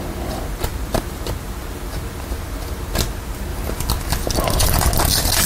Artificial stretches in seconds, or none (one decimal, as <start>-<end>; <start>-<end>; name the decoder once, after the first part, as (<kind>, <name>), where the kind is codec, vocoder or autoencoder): none